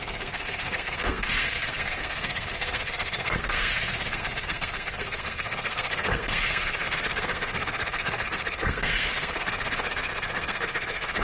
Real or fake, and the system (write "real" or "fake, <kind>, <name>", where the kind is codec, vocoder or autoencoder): fake, codec, SNAC